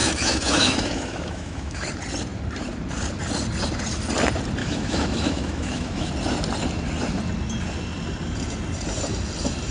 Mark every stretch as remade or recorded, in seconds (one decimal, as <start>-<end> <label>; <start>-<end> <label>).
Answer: 0.0-1.9 remade; 1.9-4.6 recorded; 4.6-6.1 remade; 6.1-9.7 recorded

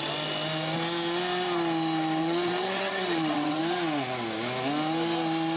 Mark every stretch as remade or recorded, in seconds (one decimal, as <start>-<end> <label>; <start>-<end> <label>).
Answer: 0.0-2.2 recorded; 2.2-3.6 remade; 3.6-5.6 recorded

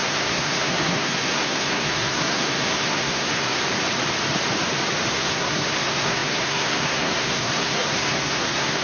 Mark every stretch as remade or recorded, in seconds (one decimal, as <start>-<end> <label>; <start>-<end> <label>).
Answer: 0.0-3.6 remade; 3.6-5.1 recorded; 5.1-8.8 remade